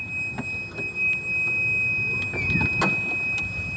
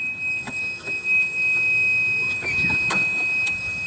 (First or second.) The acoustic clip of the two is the first